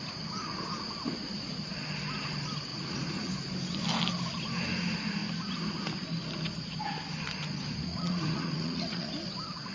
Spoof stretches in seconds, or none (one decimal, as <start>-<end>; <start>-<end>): 2.7-3.3; 7.9-9.1